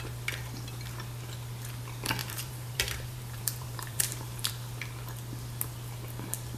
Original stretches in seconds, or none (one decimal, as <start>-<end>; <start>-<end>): 0.0-2.2; 4.5-6.6